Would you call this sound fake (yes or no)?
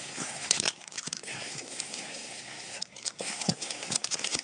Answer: yes